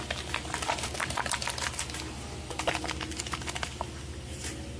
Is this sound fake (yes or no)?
no